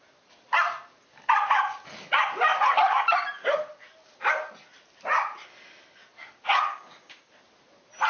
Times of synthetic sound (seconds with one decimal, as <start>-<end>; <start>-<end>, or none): 6.7-7.3